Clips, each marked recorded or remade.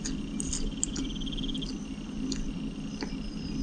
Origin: recorded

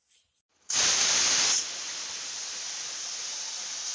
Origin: recorded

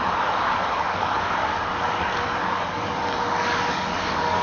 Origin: remade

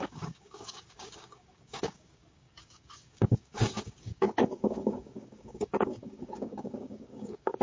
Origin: remade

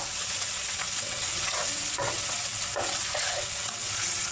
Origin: remade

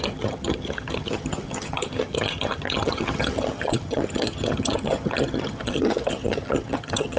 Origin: remade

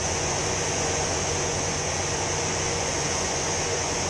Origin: remade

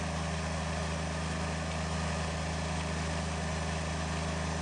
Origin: recorded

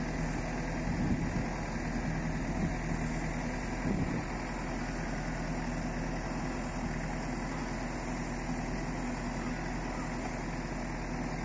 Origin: recorded